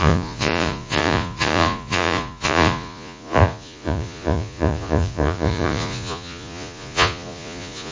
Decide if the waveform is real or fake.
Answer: fake